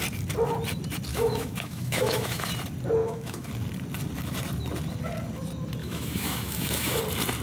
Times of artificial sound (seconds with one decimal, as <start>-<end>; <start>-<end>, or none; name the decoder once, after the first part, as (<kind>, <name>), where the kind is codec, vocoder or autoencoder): 1.1-2.5 (autoencoder, DAC-VAE); 3.0-3.5; 5.8-7.0